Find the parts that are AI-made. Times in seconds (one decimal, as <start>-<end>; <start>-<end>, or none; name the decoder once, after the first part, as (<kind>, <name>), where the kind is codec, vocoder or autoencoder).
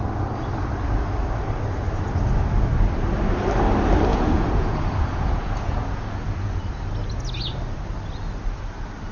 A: 4.1-6.6 (vocoder, Vocos)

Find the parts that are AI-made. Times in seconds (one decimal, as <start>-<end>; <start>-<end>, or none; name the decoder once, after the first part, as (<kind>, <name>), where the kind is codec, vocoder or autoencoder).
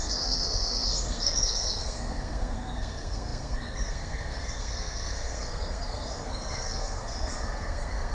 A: 0.0-8.1 (codec, SNAC)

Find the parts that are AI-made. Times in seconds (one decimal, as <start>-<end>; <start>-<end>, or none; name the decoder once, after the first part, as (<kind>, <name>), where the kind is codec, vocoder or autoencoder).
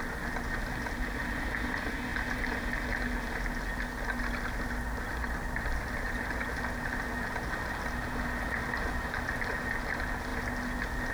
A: none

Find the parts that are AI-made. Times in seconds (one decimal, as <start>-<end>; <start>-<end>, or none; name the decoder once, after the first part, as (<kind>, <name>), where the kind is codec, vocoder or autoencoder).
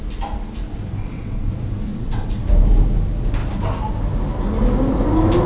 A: 1.0-1.5 (vocoder, WaveNeXt); 1.9-2.4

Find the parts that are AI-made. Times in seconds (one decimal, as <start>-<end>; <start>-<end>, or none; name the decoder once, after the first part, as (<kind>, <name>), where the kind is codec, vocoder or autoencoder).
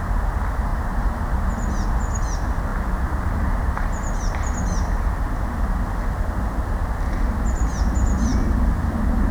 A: none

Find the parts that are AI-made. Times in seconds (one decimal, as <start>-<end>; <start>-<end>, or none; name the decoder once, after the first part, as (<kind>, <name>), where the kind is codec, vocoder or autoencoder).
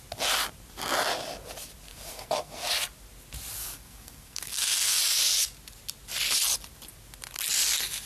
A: 1.9-2.7 (codec, SNAC); 3.6-5.0